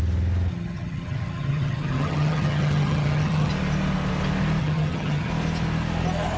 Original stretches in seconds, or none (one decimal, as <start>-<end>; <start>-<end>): 0.0-0.5; 3.5-4.6; 5.3-6.4